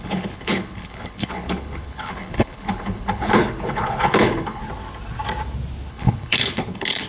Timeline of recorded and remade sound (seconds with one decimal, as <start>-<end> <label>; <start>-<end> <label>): 0.0-4.6 remade; 4.6-5.9 recorded; 5.9-7.1 remade